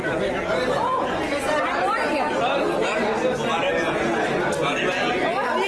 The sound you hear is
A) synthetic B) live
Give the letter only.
B